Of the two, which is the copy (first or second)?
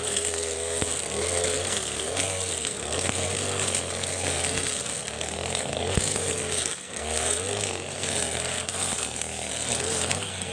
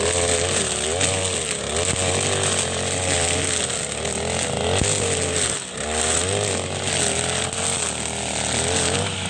first